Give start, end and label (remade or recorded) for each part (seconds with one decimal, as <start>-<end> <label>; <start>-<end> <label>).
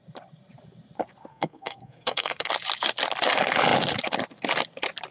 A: 0.0-1.3 recorded; 1.3-2.5 remade; 2.5-5.1 recorded